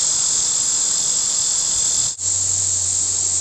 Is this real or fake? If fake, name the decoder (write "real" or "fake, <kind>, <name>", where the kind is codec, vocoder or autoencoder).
real